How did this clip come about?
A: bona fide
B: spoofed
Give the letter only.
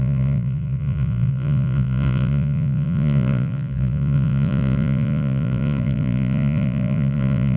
B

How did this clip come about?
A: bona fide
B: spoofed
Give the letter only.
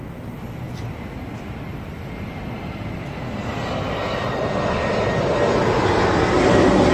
A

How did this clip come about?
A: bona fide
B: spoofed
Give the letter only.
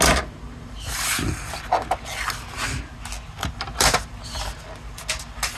A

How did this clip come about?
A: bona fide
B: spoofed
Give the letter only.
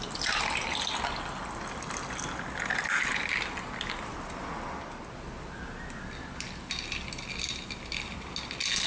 A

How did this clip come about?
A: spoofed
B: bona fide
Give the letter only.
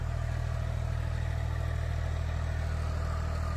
B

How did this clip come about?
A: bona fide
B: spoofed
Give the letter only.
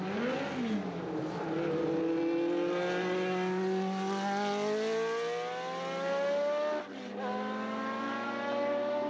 A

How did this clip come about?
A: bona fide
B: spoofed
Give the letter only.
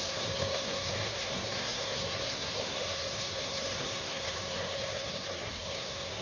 B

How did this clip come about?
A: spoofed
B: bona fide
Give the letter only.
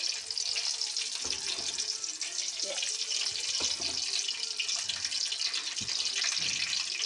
B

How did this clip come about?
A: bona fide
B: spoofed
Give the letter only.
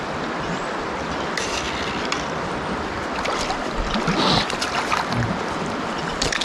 A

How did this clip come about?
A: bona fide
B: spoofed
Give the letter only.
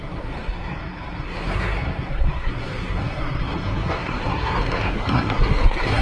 B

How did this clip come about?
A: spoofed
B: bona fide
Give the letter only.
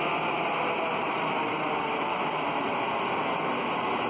B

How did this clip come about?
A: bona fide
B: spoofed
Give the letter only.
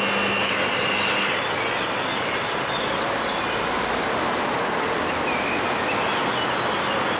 A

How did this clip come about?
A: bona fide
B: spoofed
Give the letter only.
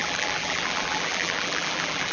B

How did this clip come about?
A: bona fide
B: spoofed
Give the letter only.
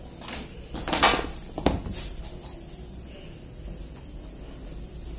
A